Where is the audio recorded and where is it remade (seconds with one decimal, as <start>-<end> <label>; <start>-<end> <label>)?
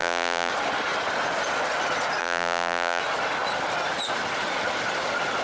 0.0-0.5 remade; 0.5-2.2 recorded; 2.2-3.0 remade; 3.0-5.4 recorded